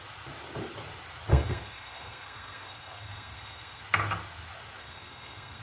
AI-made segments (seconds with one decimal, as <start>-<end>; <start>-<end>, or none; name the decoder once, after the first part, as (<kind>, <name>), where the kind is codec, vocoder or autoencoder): 1.3-3.8 (codec, SNAC); 4.8-5.6